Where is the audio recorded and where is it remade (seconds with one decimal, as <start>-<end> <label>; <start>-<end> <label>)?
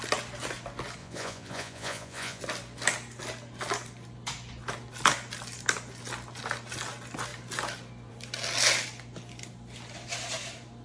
0.0-1.0 recorded; 1.0-2.4 remade; 2.4-10.8 recorded